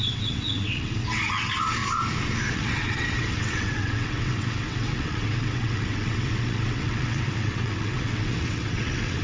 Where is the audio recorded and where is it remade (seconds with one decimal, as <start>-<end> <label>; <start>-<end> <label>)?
0.0-1.8 remade; 1.8-2.5 recorded; 2.5-9.2 remade